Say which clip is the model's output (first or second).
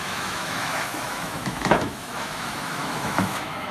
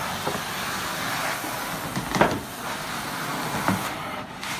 first